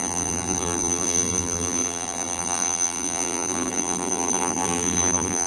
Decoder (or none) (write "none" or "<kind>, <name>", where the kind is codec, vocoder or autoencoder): vocoder, BigVGAN v2